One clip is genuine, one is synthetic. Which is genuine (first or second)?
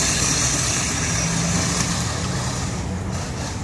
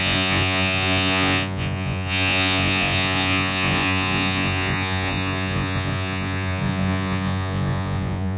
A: first